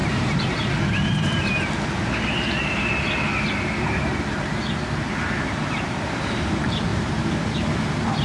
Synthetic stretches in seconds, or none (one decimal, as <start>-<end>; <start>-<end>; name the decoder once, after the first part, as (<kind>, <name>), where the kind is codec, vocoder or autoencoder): 0.0-0.7 (vocoder, BigVGAN v2); 4.3-6.4; 6.9-7.7